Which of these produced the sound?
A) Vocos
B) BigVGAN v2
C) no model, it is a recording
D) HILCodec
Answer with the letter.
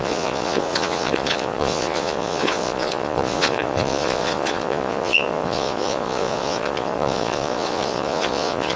A